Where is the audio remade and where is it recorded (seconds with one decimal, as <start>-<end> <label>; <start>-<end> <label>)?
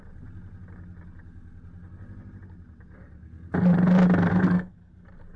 0.0-4.3 recorded; 4.3-4.9 remade; 4.9-5.4 recorded